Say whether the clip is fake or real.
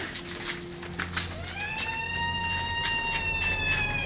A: real